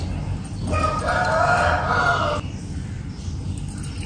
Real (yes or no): yes